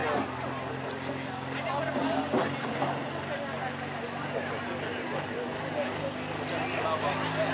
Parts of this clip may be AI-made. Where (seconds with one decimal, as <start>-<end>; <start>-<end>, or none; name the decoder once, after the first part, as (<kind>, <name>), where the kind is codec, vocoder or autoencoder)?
none